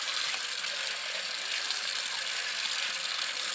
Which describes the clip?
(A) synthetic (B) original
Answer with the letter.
B